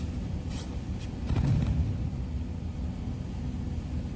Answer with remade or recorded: recorded